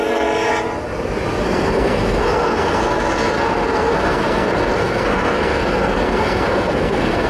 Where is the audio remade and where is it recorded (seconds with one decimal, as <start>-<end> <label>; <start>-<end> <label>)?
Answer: 0.0-0.5 remade; 0.5-1.4 recorded; 1.4-7.3 remade